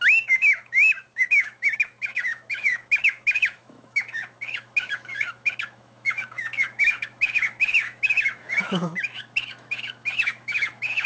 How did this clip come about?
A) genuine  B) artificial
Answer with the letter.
B